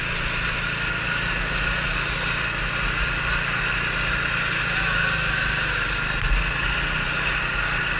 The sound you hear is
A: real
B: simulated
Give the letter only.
A